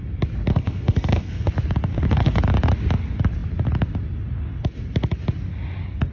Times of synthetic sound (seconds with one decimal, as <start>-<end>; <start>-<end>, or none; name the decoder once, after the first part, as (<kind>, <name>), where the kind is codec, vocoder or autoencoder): 0.5-1.5 (codec, SNAC); 1.9-2.4